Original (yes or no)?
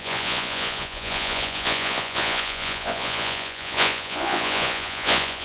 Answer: no